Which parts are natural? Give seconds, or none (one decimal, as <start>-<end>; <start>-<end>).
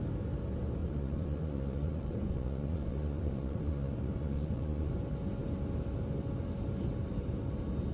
0.0-0.8; 4.9-7.9